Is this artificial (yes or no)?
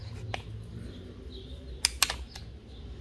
no